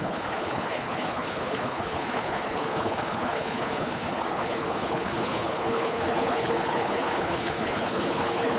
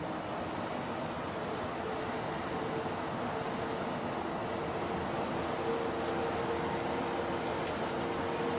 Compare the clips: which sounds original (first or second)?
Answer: second